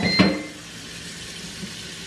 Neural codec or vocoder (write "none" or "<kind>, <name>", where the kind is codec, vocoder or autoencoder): none